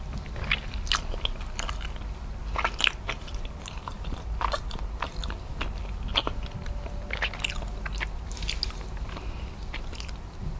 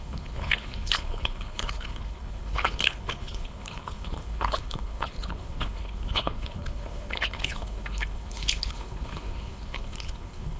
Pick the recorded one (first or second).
first